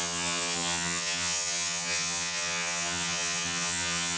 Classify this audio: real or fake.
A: fake